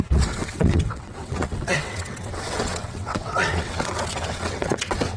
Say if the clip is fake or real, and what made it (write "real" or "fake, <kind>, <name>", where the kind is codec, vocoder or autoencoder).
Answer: fake, vocoder, WaveNeXt